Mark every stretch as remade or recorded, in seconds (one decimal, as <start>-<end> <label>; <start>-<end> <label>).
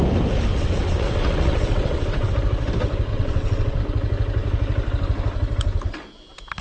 0.0-0.5 recorded; 0.5-2.3 remade; 2.3-3.1 recorded; 3.1-3.8 remade; 3.8-6.6 recorded